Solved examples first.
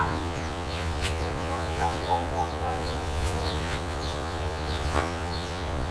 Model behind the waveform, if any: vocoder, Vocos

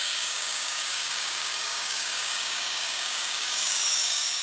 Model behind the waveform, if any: codec, DAC